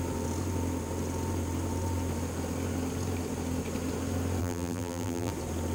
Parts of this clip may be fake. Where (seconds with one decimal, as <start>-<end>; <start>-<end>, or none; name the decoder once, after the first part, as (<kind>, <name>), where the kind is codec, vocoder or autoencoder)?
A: 4.4-5.3 (vocoder, BigVGAN v2)